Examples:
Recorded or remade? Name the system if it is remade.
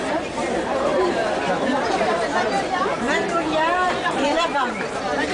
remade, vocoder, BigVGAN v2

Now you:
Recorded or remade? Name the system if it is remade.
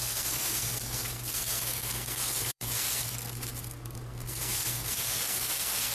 remade, codec, SNAC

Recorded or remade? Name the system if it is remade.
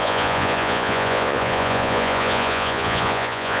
remade, vocoder, Vocos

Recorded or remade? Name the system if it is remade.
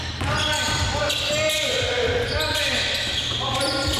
recorded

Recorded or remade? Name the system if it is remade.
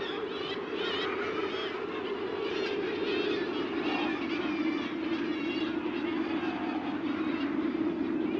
recorded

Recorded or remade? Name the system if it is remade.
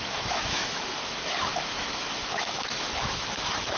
remade, autoencoder, DAC-VAE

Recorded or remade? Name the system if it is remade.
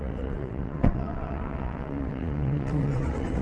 remade, vocoder, WaveNeXt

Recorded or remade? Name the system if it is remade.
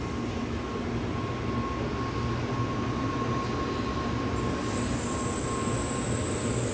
recorded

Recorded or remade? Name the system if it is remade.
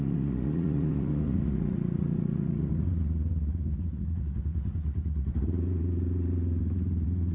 remade, vocoder, Vocos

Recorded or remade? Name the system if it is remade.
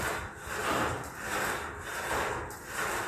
recorded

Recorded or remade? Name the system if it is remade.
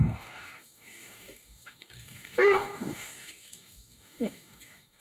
remade, codec, DAC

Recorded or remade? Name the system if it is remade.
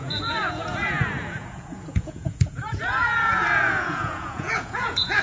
remade, vocoder, Vocos